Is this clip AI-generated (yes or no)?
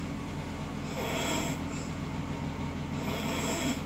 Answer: no